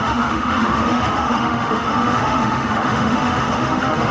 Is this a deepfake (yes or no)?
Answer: yes